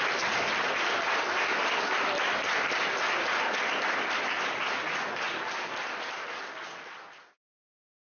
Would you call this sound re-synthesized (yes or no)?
no